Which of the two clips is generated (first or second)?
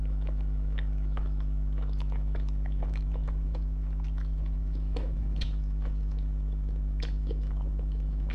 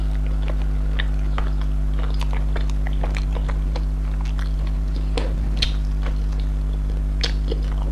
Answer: first